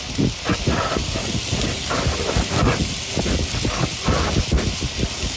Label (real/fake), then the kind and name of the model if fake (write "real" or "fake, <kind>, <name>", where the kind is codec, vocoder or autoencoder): real